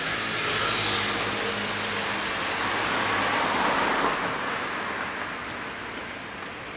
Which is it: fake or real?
real